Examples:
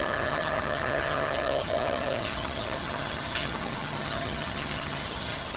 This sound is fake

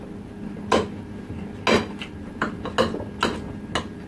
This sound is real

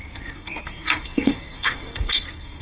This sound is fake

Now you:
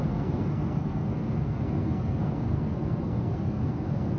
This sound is fake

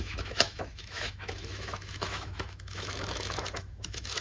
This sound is fake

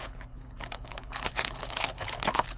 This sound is fake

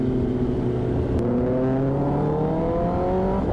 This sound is real